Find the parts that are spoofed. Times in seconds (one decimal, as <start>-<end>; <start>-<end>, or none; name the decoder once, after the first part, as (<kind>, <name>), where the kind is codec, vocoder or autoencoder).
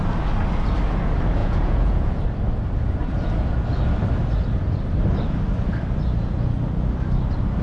1.4-2.2 (vocoder, Vocos)